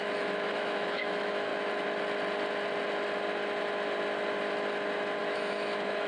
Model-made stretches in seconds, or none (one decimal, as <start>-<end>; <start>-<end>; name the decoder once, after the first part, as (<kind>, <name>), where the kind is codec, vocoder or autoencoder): 0.0-1.5 (autoencoder, DAC-VAE); 5.2-6.1